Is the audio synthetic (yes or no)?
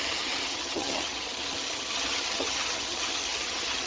yes